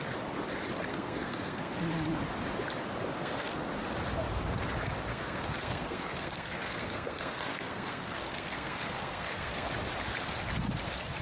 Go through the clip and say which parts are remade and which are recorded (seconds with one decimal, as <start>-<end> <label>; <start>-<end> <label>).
0.0-0.9 recorded; 0.9-1.7 remade; 1.7-3.2 recorded; 3.2-3.7 remade; 3.7-5.1 recorded; 5.1-9.7 remade; 9.7-11.2 recorded

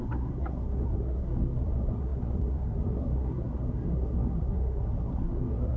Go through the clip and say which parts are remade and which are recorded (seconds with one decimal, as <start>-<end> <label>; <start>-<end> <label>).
0.0-5.8 remade

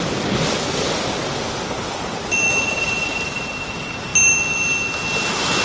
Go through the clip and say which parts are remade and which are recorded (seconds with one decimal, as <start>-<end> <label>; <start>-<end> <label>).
0.0-5.6 recorded